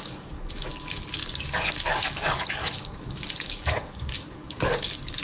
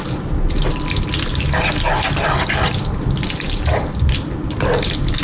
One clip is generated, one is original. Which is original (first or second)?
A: second